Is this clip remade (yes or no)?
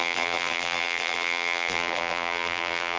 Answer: yes